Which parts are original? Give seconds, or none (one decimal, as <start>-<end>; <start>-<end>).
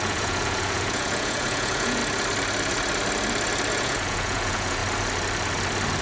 2.0-3.7; 4.8-6.0